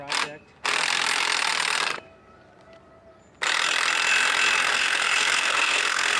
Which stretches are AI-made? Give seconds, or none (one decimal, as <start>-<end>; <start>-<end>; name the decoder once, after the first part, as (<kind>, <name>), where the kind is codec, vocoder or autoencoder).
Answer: 4.7-6.2 (codec, SNAC)